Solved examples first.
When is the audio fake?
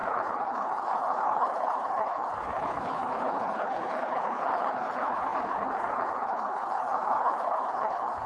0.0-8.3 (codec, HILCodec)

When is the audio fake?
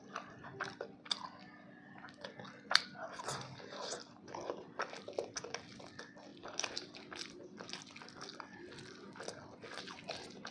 none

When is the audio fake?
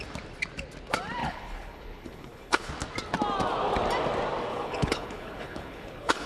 1.2-2.7 (codec, HILCodec); 4.5-6.3